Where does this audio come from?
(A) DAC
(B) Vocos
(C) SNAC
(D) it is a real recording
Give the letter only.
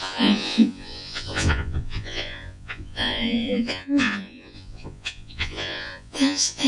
B